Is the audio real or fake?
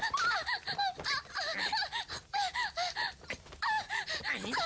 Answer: fake